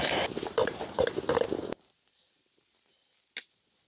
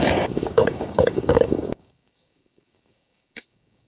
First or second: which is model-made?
second